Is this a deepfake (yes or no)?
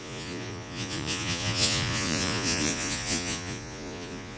yes